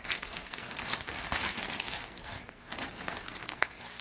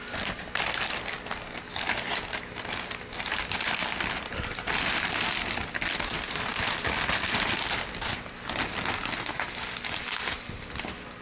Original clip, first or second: second